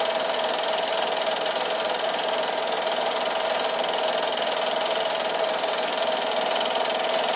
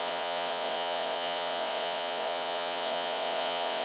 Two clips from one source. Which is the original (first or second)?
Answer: first